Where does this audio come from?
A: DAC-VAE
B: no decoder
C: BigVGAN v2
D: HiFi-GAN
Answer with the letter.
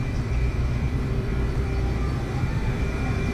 C